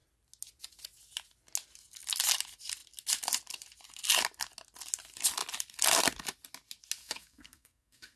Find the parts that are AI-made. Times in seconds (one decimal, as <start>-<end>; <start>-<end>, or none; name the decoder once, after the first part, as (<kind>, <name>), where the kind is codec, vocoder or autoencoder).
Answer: 7.0-8.2 (codec, SNAC)